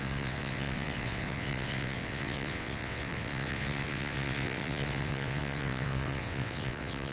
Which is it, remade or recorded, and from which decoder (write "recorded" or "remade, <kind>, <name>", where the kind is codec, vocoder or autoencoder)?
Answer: remade, vocoder, WaveNeXt